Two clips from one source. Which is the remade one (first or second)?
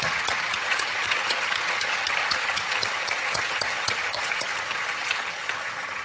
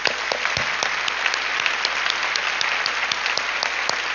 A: first